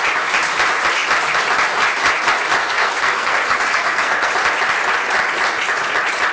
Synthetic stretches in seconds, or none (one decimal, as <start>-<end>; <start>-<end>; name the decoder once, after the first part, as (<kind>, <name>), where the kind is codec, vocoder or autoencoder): 2.6-4.3 (codec, SNAC)